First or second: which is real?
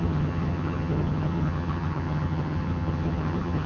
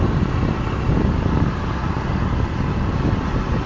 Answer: second